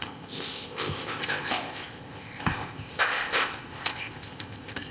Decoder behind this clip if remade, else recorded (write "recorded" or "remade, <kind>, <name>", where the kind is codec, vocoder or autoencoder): remade, codec, ZipCodec